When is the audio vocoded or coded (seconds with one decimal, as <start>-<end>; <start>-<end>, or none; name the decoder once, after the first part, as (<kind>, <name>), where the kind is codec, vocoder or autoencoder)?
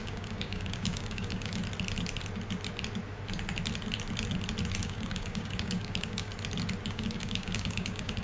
0.0-1.6 (codec, DAC); 4.8-6.3; 6.9-8.2